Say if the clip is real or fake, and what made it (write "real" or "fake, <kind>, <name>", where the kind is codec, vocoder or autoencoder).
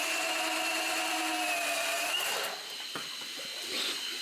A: real